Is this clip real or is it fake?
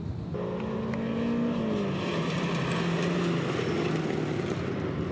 real